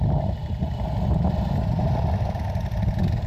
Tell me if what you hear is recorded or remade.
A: recorded